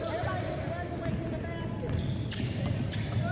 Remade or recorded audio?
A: recorded